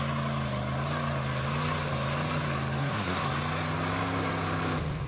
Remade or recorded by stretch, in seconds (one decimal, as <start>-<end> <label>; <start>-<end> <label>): 0.0-2.8 recorded; 2.8-3.3 remade; 3.3-5.1 recorded